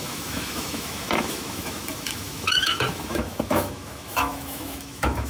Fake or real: fake